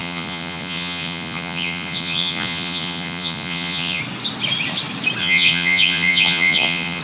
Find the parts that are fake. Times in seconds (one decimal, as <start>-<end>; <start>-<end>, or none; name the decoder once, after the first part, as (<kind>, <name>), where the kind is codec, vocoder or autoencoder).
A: 0.0-4.0 (vocoder, Vocos); 5.2-7.0